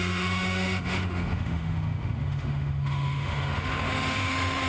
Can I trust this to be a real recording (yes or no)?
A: no